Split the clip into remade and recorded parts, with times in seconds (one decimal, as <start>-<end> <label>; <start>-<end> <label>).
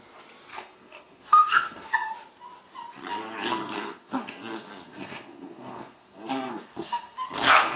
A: 0.0-0.5 recorded; 0.5-2.1 remade; 2.1-3.5 recorded; 3.5-7.8 remade